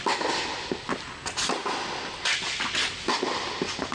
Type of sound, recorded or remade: recorded